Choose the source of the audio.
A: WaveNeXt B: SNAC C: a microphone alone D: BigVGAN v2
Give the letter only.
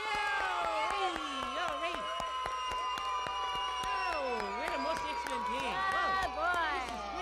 C